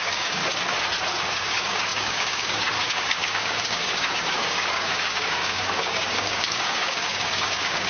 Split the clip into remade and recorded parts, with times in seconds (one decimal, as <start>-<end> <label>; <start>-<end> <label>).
0.0-0.4 remade; 0.4-1.2 recorded; 1.2-7.9 remade